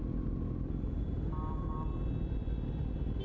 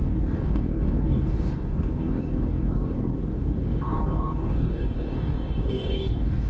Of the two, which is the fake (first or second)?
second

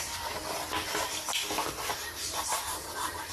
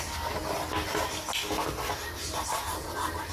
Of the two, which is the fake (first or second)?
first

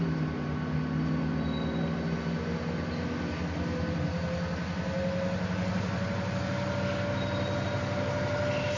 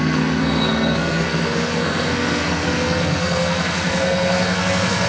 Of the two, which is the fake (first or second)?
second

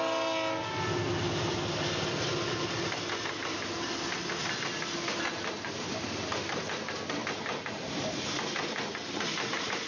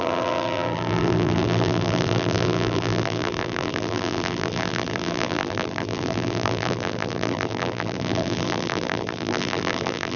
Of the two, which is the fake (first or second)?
second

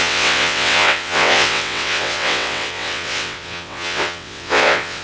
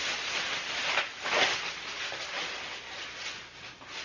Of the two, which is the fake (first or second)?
first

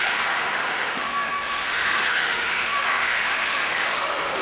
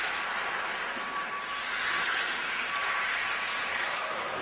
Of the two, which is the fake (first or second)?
first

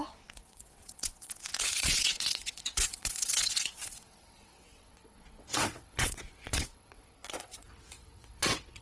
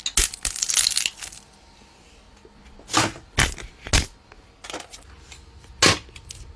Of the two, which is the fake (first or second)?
first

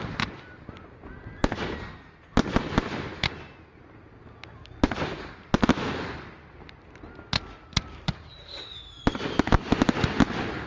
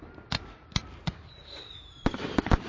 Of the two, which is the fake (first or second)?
second